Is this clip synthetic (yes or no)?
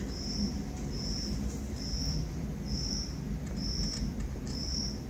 no